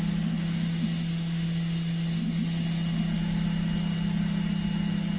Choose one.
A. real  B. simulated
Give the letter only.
A